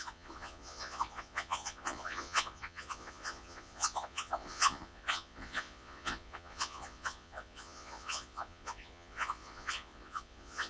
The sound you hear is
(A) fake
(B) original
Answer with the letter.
A